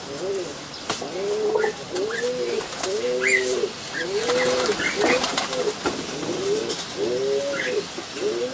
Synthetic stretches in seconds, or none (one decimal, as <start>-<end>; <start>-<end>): none